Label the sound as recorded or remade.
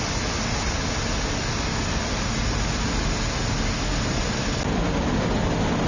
recorded